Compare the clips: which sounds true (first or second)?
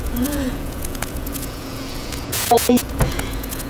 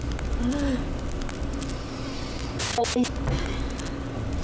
second